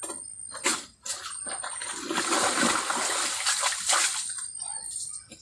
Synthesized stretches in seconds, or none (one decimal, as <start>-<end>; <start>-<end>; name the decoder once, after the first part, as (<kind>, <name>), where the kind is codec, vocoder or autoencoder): none